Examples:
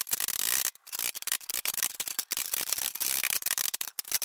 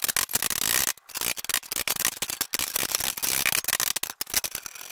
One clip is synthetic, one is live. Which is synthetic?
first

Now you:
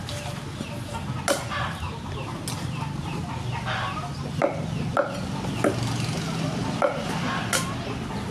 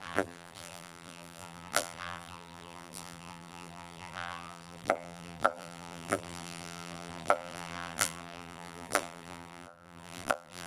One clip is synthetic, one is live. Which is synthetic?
second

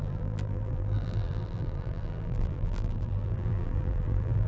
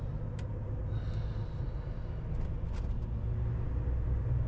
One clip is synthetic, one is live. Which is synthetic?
first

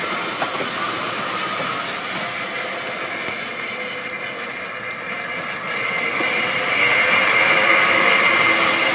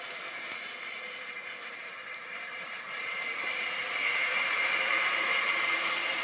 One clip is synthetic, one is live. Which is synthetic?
second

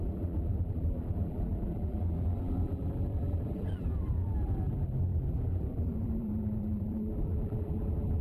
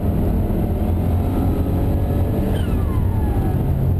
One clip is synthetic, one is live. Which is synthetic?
first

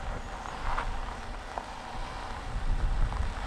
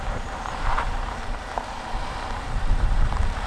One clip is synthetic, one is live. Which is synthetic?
second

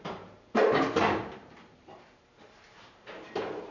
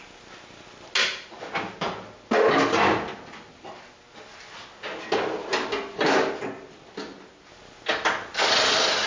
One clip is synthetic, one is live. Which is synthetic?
first